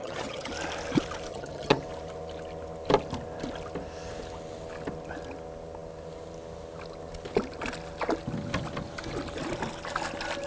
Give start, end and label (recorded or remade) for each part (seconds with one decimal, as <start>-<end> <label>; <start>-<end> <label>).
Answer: 0.0-0.5 remade; 0.5-1.3 recorded; 1.3-1.8 remade; 1.8-10.5 recorded

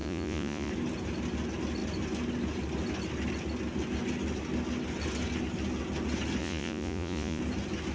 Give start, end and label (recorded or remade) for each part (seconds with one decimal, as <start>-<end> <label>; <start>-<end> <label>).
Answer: 0.0-0.7 remade; 0.7-6.4 recorded; 6.4-7.4 remade; 7.4-7.9 recorded

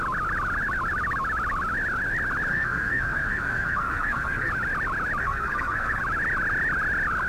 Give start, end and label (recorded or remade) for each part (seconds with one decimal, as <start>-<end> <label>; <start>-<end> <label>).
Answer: 0.0-2.5 recorded; 2.5-4.5 remade; 4.5-5.2 recorded; 5.2-6.0 remade; 6.0-7.3 recorded

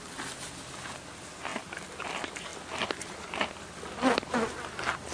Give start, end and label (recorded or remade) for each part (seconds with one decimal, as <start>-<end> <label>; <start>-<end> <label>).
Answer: 0.0-1.5 recorded; 1.5-2.0 remade; 2.0-5.1 recorded

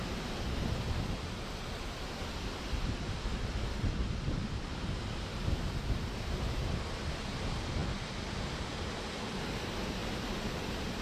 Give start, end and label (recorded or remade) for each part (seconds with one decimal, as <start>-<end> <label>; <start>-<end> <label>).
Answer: 0.0-4.4 recorded; 4.4-5.4 remade; 5.4-11.0 recorded

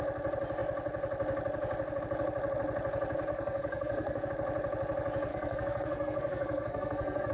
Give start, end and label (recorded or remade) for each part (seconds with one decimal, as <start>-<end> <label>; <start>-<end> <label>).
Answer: 0.0-3.3 recorded; 3.3-4.3 remade; 4.3-5.3 recorded; 5.3-7.3 remade